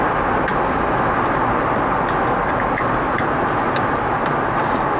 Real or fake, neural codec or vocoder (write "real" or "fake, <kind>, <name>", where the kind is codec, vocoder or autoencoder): real